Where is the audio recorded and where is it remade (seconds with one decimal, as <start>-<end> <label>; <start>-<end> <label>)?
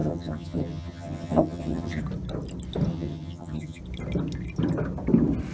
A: 0.0-2.0 remade; 2.0-2.9 recorded; 2.9-3.8 remade; 3.8-5.5 recorded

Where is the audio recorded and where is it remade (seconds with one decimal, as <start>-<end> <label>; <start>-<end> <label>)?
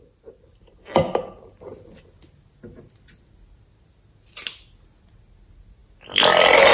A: 0.0-6.7 recorded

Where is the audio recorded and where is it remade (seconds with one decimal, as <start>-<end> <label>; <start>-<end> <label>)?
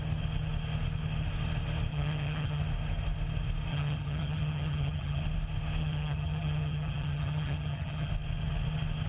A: 0.0-1.9 recorded; 1.9-2.6 remade; 2.6-3.7 recorded; 3.7-5.2 remade; 5.2-5.8 recorded; 5.8-8.1 remade; 8.1-9.1 recorded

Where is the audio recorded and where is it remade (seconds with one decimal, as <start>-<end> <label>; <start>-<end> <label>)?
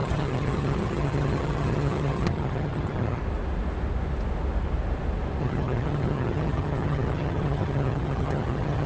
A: 0.0-3.2 remade; 3.2-5.4 recorded; 5.4-8.9 remade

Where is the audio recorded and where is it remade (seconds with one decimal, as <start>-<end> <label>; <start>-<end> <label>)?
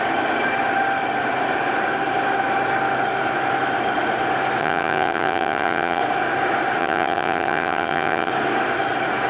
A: 0.0-4.6 recorded; 4.6-6.0 remade; 6.0-6.8 recorded; 6.8-8.3 remade; 8.3-9.3 recorded